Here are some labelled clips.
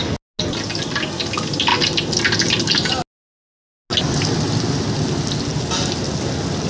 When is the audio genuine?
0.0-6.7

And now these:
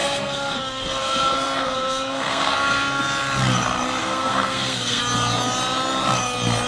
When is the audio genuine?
3.0-4.0; 5.0-6.7

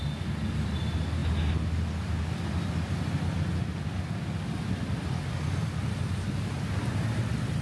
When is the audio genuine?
0.0-7.6

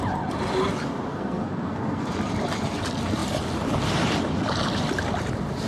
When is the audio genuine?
0.0-1.1; 2.1-5.7

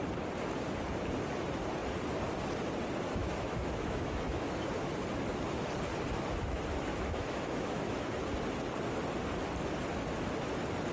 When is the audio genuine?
0.0-3.2; 4.9-6.9; 8.1-10.9

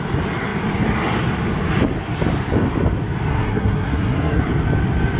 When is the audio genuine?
0.0-3.3; 4.4-5.2